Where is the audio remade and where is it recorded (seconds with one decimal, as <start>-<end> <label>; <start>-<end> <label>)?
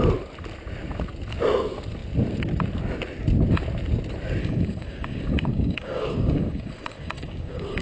0.0-4.4 recorded; 4.4-7.8 remade